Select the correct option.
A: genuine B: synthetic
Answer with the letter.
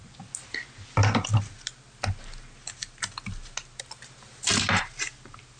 A